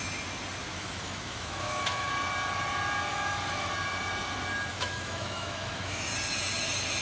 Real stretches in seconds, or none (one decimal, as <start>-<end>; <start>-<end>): 0.0-0.7; 2.1-3.1; 3.7-4.7; 6.1-7.0